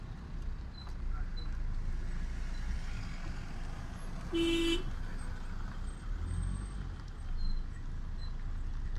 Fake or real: real